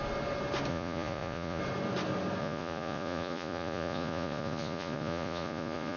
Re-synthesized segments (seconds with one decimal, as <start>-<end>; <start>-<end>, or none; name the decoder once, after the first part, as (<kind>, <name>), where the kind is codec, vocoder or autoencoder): 0.7-1.6 (vocoder, Vocos); 2.4-6.0